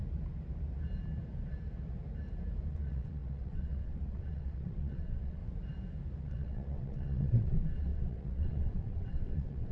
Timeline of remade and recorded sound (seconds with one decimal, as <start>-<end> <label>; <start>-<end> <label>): 0.0-2.7 recorded; 2.7-5.4 remade; 5.4-6.2 recorded; 6.2-9.7 remade